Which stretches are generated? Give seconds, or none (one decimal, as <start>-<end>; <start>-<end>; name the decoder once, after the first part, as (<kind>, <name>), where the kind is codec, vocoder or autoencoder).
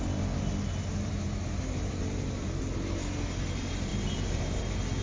0.8-2.6 (vocoder, BigVGAN v2); 3.9-4.6